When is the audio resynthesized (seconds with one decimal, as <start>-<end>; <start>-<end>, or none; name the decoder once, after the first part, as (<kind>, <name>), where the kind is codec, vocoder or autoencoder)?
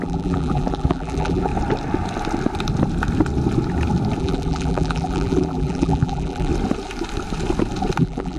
0.0-1.5 (vocoder, BigVGAN v2); 4.2-6.5; 8.0-8.4